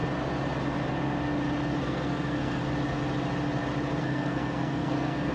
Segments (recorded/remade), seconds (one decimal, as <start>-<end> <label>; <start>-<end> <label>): 0.0-1.8 recorded; 1.8-2.6 remade; 2.6-4.0 recorded; 4.0-5.3 remade

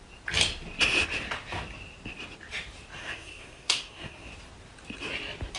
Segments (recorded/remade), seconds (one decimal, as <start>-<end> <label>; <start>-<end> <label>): 0.0-3.0 recorded; 3.0-4.3 remade; 4.3-5.6 recorded